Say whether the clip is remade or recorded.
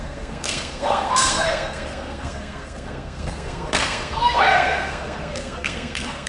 remade